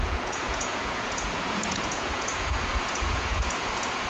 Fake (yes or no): yes